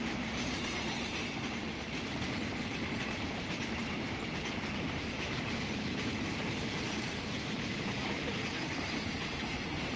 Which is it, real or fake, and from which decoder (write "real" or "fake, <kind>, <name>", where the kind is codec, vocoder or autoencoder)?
fake, vocoder, BigVGAN v2